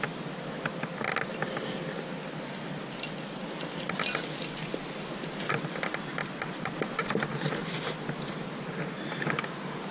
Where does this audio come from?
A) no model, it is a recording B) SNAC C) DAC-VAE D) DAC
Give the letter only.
A